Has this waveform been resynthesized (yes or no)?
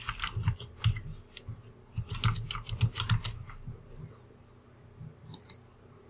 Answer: no